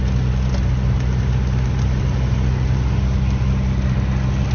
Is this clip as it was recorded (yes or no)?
yes